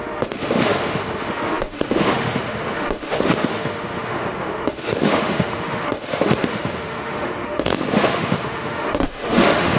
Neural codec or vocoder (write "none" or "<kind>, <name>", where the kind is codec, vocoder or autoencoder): autoencoder, DAC-VAE